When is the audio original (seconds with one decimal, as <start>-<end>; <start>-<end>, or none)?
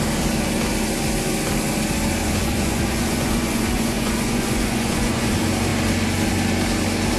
0.0-2.2; 5.3-7.2